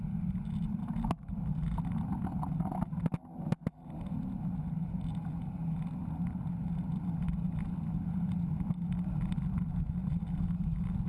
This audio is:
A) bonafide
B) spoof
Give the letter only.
A